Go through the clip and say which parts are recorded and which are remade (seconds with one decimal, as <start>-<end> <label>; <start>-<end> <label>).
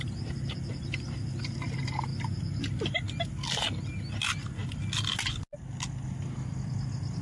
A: 0.0-7.2 recorded